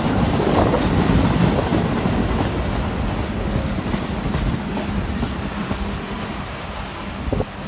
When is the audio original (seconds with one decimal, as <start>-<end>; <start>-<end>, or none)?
0.0-7.7